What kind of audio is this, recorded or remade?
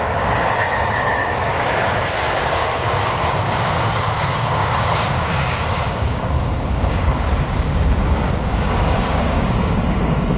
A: remade